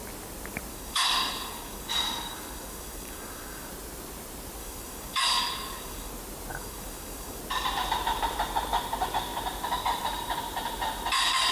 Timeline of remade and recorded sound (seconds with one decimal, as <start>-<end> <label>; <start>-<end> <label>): 0.0-0.7 recorded; 0.7-3.7 remade; 3.7-4.6 recorded; 4.6-6.1 remade; 6.1-6.5 recorded; 6.5-7.4 remade; 7.4-11.5 recorded